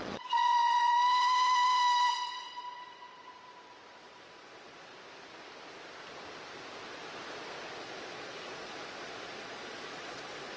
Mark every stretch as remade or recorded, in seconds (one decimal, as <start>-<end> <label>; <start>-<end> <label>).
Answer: 0.0-1.0 remade; 1.0-4.0 recorded; 4.0-4.9 remade; 4.9-7.8 recorded; 7.8-10.6 remade